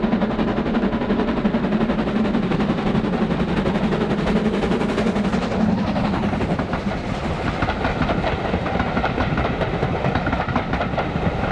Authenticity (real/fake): real